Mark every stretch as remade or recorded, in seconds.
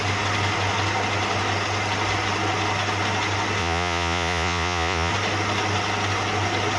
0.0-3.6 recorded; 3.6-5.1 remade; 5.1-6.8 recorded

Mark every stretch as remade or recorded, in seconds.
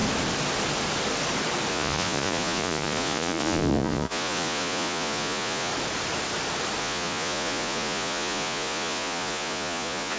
0.0-1.7 recorded; 1.7-5.7 remade; 5.7-6.8 recorded; 6.8-10.2 remade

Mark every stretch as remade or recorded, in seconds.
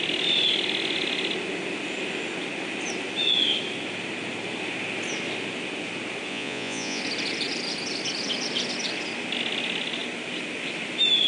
0.0-6.3 recorded; 6.3-7.0 remade; 7.0-11.3 recorded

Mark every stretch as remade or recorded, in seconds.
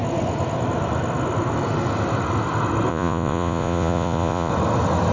0.0-2.9 recorded; 2.9-4.5 remade; 4.5-5.1 recorded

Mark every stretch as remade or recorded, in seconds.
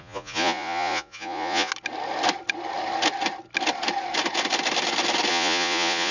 0.0-1.7 remade; 1.7-5.3 recorded; 5.3-6.1 remade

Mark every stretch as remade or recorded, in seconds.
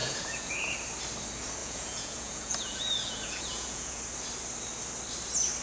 0.0-0.5 remade; 0.5-1.6 recorded; 1.6-4.0 remade; 4.0-5.6 recorded